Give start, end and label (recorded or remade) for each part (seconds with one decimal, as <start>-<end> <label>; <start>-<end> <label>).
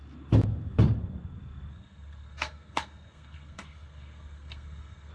0.0-1.7 recorded; 1.7-5.1 remade